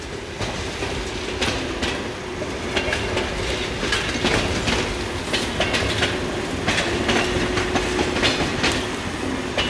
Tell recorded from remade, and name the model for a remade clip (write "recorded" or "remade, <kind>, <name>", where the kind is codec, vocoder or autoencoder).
recorded